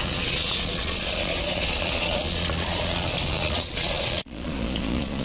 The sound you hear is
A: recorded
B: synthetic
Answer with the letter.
B